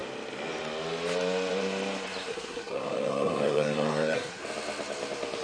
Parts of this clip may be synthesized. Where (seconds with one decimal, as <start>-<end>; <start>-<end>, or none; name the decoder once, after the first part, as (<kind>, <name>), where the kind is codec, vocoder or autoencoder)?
2.3-4.4 (codec, SNAC)